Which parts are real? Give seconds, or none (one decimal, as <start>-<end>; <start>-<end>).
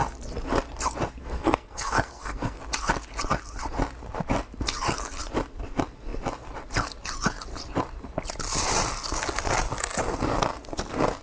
0.0-1.2; 2.6-11.2